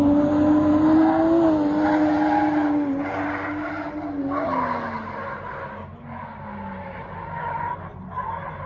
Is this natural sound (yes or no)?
yes